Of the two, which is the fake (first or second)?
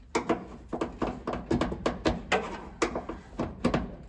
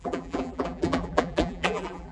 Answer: second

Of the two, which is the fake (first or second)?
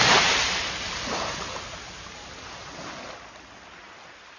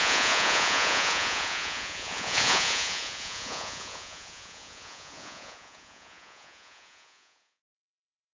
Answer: second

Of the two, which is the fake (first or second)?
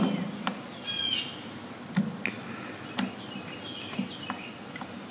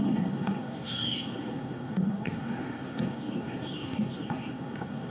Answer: second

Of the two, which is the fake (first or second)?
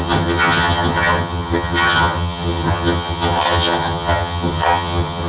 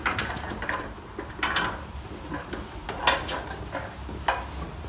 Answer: first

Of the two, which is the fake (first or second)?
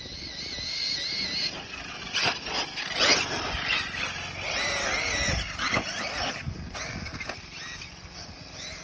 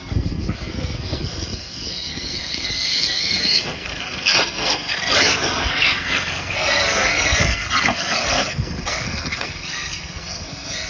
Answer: second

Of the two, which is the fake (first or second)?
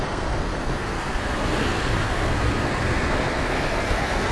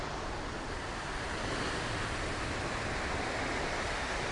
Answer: first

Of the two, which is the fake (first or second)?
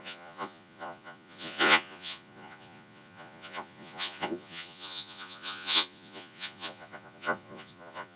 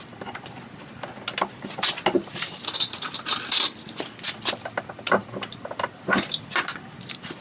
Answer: first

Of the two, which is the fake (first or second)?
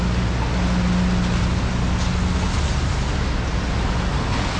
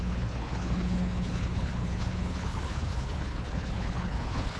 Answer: second